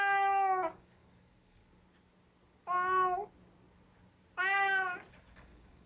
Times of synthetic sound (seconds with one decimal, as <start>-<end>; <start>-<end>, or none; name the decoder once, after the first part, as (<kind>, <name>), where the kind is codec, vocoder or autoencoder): 0.0-1.6 (codec, DAC); 5.1-5.9

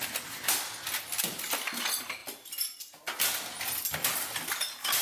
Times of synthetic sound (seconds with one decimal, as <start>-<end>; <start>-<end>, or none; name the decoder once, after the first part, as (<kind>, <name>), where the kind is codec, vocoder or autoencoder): none

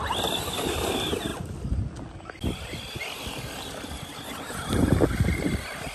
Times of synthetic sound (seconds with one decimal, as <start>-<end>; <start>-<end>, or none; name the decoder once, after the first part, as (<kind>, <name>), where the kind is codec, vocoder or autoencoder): none

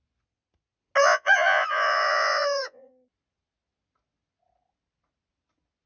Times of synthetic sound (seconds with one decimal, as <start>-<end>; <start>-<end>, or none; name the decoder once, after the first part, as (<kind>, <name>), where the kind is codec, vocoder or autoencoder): 1.0-2.9 (vocoder, Vocos)

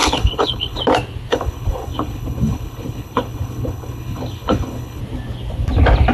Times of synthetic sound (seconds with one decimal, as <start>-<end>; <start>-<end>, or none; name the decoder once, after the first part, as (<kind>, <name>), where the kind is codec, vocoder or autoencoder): 0.0-0.8 (codec, HILCodec); 1.3-5.0